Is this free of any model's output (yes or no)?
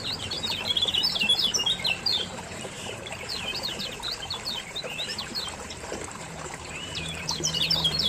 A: no